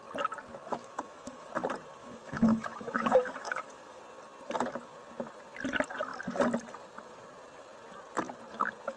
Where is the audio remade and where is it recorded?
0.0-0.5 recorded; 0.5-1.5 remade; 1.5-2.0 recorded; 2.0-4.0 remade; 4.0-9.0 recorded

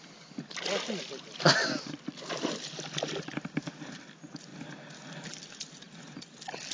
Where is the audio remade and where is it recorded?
0.0-6.7 recorded

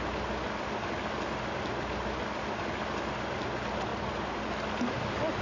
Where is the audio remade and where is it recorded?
0.0-5.4 recorded

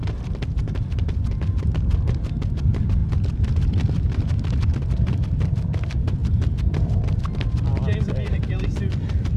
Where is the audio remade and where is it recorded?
0.0-6.2 remade; 6.2-7.0 recorded; 7.0-9.4 remade

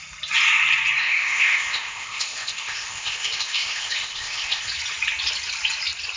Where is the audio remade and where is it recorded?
0.0-1.0 recorded; 1.0-4.7 remade; 4.7-6.2 recorded

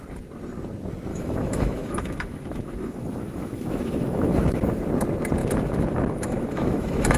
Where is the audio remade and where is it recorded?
0.0-1.1 recorded; 1.1-4.8 remade; 4.8-5.4 recorded; 5.4-7.2 remade